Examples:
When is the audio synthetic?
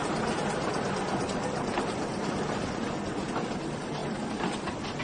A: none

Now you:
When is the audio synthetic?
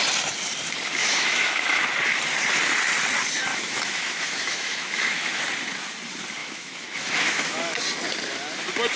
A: 1.0-1.8 (autoencoder, DAC-VAE); 3.5-5.4; 6.4-7.8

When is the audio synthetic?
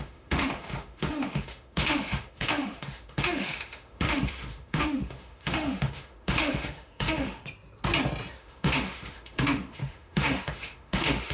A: 0.0-7.4 (autoencoder, DAC-VAE); 8.4-11.3